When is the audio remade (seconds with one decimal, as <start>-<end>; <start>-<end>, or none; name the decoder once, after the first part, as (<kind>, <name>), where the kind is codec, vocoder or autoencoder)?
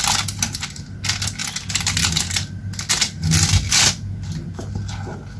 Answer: none